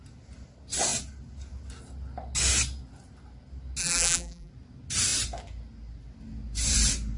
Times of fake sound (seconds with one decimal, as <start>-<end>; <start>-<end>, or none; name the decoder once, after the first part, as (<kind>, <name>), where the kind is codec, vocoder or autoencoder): 3.8-4.5 (vocoder, BigVGAN v2)